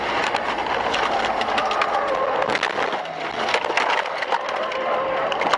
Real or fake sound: real